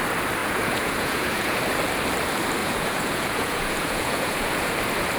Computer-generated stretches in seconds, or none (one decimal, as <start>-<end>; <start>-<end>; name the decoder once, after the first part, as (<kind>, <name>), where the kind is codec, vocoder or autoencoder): 0.4-1.6 (vocoder, Vocos); 2.6-4.7